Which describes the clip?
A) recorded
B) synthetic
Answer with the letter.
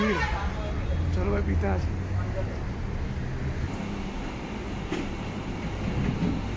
A